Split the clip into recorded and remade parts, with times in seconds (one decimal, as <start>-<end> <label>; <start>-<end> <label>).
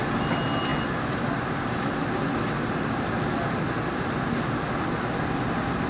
0.0-5.9 recorded